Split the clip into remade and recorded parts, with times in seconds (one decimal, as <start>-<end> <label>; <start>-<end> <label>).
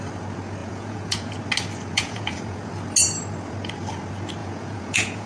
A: 0.0-0.6 recorded; 0.6-1.3 remade; 1.3-1.9 recorded; 1.9-2.7 remade; 2.7-4.4 recorded; 4.4-5.3 remade